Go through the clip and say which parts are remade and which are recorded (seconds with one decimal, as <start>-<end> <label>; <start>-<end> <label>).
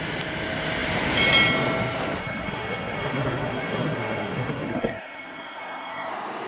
0.0-2.2 recorded; 2.2-6.1 remade; 6.1-6.5 recorded